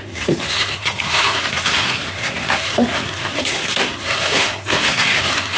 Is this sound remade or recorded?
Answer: remade